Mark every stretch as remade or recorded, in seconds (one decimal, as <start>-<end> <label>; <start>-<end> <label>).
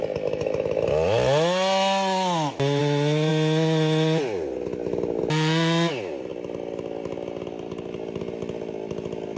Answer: 0.0-9.4 recorded